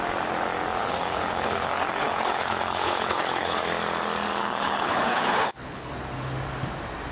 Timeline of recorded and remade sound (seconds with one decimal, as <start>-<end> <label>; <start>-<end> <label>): 0.0-0.8 recorded; 0.8-3.6 remade; 3.6-4.4 recorded; 4.4-5.9 remade; 5.9-7.1 recorded